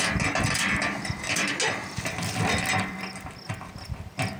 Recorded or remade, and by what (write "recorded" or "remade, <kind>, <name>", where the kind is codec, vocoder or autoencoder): recorded